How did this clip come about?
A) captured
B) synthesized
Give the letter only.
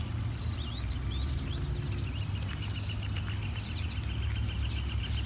A